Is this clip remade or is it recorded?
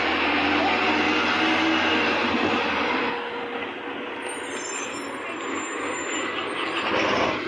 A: recorded